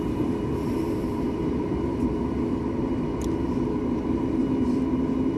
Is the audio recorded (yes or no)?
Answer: yes